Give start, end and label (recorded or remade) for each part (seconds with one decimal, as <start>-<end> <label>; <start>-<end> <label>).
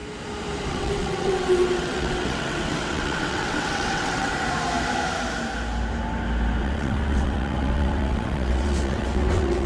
0.0-0.7 recorded; 0.7-4.3 remade; 4.3-6.6 recorded; 6.6-9.7 remade